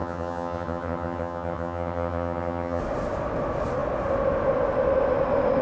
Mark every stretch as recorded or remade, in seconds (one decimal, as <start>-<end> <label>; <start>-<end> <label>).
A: 0.0-2.8 remade; 2.8-5.6 recorded